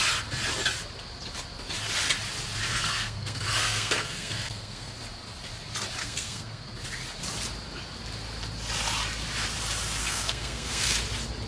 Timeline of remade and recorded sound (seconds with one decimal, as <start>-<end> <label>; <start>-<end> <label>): 0.0-2.7 recorded; 2.7-4.9 remade; 4.9-6.0 recorded; 6.0-6.6 remade; 6.6-10.0 recorded; 10.0-11.0 remade; 11.0-11.5 recorded